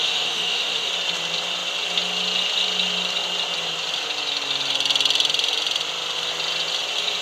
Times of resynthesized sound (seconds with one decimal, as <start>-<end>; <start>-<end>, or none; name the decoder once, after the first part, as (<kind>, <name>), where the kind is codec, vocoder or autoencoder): 0.0-0.9 (autoencoder, DAC-VAE)